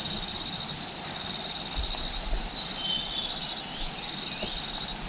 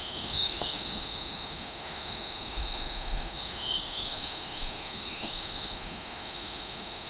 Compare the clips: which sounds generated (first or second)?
second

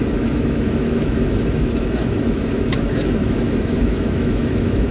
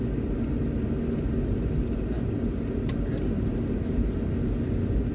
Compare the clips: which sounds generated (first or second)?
first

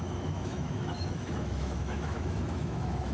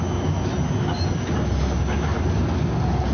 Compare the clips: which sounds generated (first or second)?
first